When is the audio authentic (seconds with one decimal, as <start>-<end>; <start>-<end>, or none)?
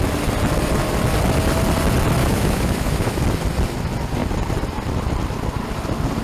0.0-2.2; 3.2-6.2